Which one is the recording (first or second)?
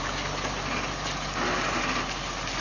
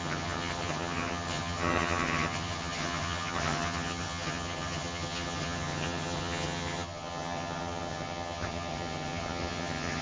first